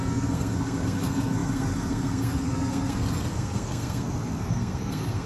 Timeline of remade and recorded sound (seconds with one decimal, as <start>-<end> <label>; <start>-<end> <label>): 0.0-5.3 remade